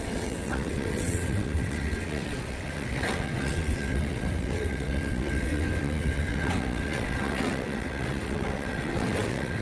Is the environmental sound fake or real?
fake